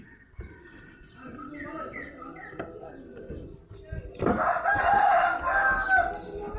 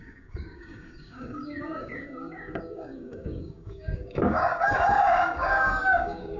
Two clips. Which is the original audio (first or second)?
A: first